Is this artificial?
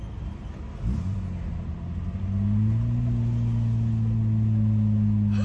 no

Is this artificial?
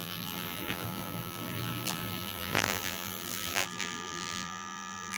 yes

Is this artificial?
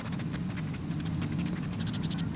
yes